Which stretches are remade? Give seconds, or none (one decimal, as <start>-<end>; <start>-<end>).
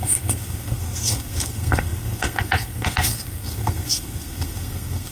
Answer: 0.0-5.1